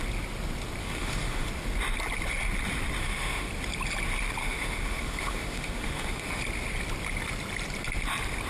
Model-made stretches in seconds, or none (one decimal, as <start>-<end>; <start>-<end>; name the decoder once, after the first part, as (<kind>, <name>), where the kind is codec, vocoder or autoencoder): 0.8-1.5 (autoencoder, DAC-VAE); 3.0-3.5; 4.4-6.4